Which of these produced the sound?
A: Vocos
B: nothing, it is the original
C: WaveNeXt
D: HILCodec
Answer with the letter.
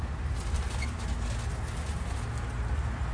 B